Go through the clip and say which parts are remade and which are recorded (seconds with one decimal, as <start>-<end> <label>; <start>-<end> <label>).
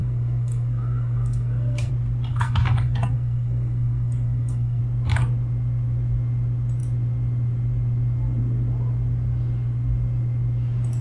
0.0-1.9 remade; 1.9-2.3 recorded; 2.3-4.8 remade; 4.8-11.0 recorded